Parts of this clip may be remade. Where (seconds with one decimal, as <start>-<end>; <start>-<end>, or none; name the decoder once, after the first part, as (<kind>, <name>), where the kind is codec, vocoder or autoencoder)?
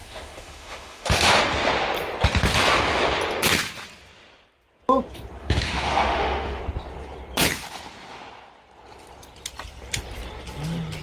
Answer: 0.0-1.4 (autoencoder, DAC-VAE); 5.4-6.6